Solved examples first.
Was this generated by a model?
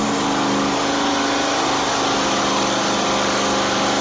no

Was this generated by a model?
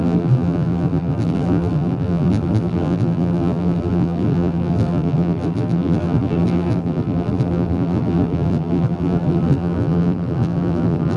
yes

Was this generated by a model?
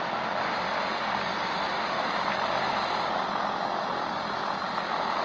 no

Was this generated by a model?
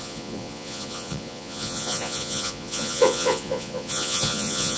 yes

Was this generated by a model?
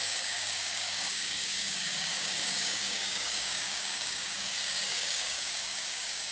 yes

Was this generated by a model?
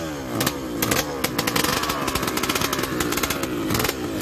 no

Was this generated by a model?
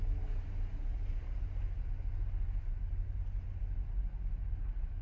no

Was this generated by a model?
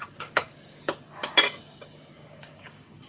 yes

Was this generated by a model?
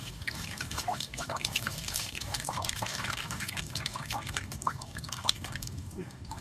yes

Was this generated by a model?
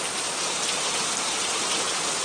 yes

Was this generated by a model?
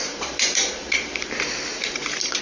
yes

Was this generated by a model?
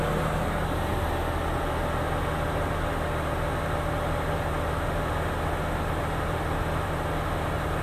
no